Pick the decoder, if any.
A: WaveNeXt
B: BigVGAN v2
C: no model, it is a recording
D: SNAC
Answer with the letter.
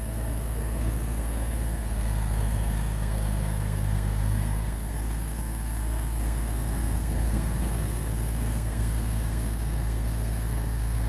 D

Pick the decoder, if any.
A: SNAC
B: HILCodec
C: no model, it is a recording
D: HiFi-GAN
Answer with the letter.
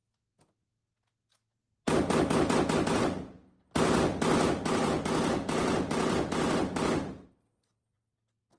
C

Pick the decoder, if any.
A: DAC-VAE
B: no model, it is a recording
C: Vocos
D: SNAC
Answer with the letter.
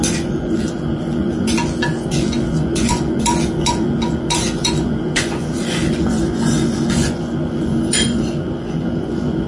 C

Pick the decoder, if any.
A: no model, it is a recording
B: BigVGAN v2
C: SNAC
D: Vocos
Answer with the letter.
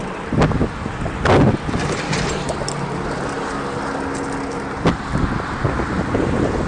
A